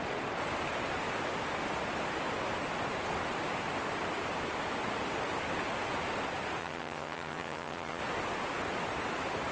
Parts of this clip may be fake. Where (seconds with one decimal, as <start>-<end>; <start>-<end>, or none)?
6.6-8.0